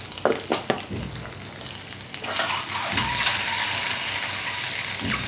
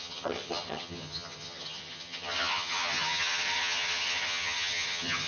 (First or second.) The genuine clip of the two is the first